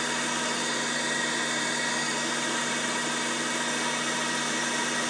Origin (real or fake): real